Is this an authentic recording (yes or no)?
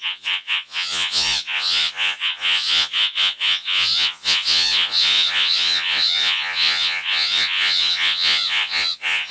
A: no